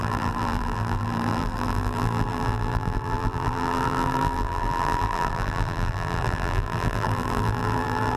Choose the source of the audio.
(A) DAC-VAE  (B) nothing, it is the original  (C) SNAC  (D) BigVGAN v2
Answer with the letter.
D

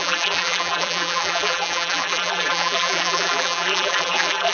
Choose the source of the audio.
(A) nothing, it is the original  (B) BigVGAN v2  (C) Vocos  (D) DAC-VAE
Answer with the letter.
B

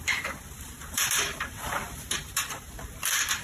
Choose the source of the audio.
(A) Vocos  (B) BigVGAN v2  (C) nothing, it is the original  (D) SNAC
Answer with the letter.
B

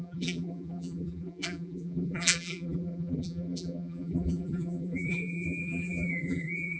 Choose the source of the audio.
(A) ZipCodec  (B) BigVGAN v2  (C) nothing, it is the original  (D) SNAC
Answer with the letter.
B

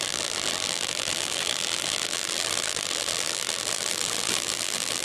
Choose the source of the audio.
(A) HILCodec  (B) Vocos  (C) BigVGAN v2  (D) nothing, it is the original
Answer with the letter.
C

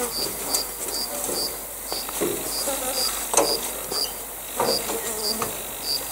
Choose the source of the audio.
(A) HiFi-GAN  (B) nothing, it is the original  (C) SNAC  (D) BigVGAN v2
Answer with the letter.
B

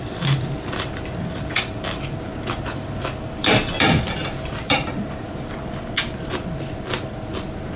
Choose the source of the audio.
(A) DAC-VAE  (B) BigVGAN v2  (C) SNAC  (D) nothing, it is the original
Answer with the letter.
B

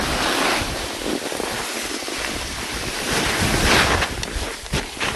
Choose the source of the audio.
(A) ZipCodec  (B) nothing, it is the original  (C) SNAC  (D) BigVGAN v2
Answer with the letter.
B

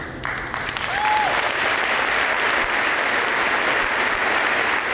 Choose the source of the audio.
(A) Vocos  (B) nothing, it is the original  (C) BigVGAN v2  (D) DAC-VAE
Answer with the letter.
B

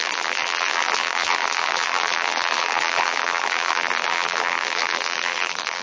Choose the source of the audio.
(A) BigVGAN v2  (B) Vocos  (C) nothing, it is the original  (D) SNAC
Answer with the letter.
A